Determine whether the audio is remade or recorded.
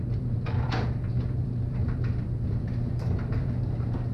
remade